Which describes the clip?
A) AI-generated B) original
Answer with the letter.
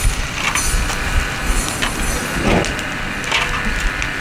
B